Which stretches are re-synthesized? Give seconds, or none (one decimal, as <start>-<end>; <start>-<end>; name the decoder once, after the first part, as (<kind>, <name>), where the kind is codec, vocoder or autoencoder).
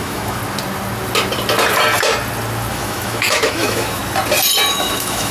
0.0-0.4 (autoencoder, DAC-VAE); 2.7-4.0; 4.7-5.3